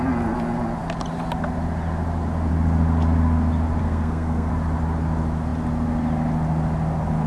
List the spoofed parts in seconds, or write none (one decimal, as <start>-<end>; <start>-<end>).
3.8-4.5